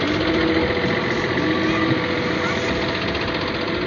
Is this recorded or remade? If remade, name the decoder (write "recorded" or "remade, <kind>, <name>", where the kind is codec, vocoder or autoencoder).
recorded